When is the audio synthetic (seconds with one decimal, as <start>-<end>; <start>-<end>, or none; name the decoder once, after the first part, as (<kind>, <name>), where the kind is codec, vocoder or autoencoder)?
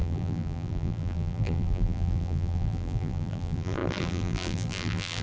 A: 0.0-5.2 (vocoder, BigVGAN v2)